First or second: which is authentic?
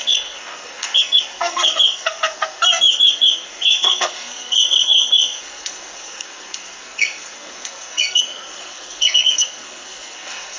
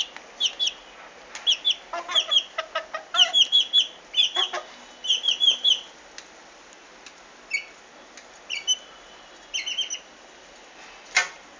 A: second